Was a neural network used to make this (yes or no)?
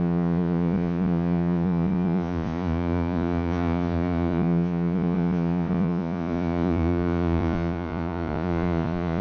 yes